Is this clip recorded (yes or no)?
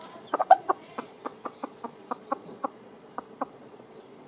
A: no